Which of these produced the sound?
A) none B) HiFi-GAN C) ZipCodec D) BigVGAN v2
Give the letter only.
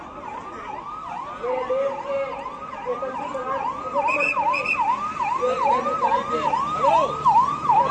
A